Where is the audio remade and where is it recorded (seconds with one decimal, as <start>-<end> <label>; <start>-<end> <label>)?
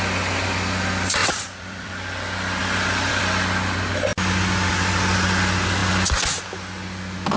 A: 0.0-1.2 recorded; 1.2-1.9 remade; 1.9-2.6 recorded; 2.6-3.2 remade; 3.2-7.4 recorded